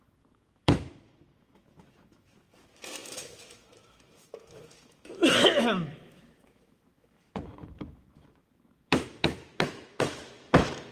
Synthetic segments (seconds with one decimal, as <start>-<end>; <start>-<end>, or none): 0.0-10.9